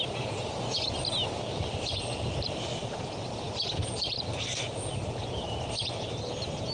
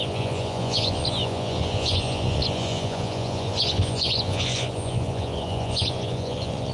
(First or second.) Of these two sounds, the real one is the first